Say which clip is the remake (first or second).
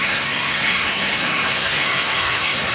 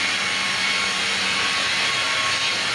first